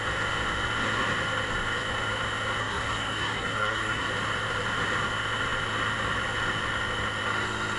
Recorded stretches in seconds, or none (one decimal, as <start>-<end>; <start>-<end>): 0.0-2.6; 4.1-7.8